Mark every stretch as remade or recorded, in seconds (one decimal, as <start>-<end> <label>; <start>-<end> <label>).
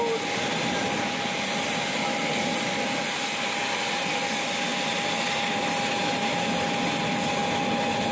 0.0-8.1 recorded